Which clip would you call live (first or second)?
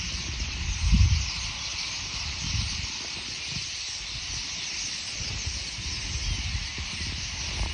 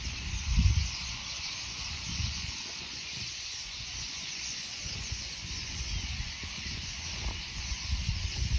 first